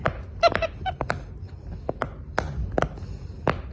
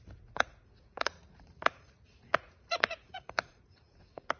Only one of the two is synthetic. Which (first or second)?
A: second